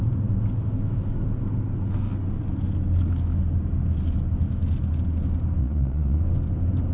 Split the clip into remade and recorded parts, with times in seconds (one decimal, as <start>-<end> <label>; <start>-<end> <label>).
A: 0.0-5.6 recorded; 5.6-6.2 remade; 6.2-6.9 recorded